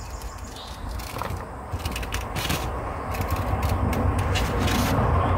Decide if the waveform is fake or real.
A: real